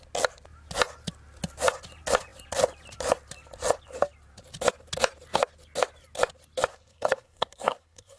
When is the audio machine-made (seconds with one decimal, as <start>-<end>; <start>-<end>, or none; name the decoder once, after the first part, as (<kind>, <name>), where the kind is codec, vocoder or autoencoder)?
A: 6.7-8.2 (codec, SNAC)